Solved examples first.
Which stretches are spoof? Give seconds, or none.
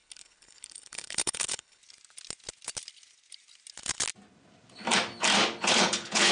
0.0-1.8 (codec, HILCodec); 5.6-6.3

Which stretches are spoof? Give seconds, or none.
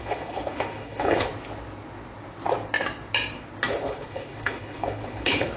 0.0-1.3 (codec, HILCodec); 3.8-5.6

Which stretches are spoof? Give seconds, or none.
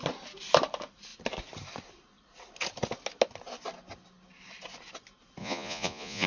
5.4-6.3 (vocoder, Vocos)